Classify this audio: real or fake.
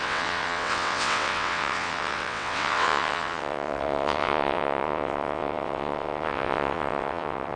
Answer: fake